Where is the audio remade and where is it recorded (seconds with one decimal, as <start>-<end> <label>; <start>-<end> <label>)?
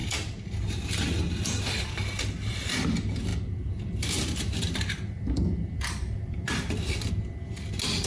0.0-3.3 recorded; 3.3-7.1 remade; 7.1-8.1 recorded